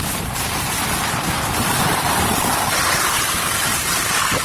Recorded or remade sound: remade